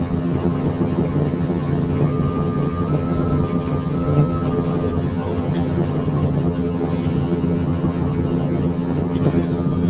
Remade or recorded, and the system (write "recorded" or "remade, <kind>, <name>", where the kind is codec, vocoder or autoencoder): remade, vocoder, HiFi-GAN